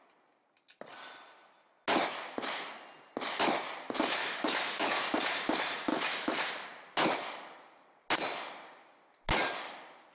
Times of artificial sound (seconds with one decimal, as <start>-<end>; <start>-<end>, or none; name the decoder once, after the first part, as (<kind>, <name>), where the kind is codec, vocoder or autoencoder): 4.2-4.9 (autoencoder, DAC-VAE); 5.9-6.5